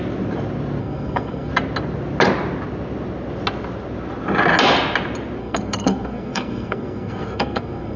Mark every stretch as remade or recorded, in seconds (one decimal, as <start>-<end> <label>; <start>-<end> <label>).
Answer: 0.0-0.8 recorded; 0.8-1.5 remade; 1.5-5.4 recorded; 5.4-8.0 remade